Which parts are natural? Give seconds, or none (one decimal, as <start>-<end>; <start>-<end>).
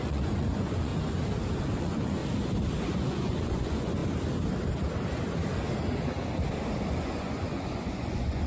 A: 0.9-1.8; 2.2-2.8; 4.0-6.9